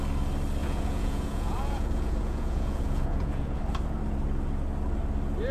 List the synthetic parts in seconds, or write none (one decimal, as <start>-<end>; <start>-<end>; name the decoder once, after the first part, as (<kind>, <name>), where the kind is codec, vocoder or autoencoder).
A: 0.6-3.6 (vocoder, Vocos)